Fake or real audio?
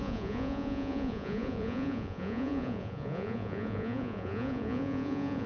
fake